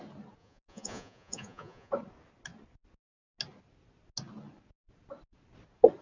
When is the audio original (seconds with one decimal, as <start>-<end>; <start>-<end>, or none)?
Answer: 0.0-0.4; 1.9-6.0